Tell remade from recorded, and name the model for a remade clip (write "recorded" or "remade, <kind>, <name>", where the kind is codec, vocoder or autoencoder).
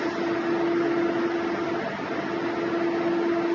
recorded